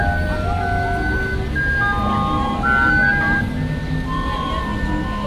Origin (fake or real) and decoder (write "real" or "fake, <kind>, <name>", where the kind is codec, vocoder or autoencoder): real